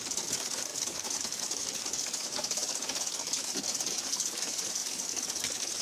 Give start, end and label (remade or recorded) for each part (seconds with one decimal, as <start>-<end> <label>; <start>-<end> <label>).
0.0-5.8 remade